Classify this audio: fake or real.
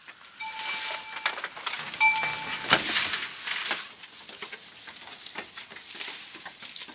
real